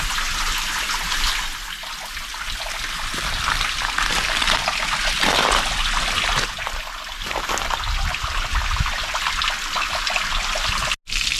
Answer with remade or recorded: recorded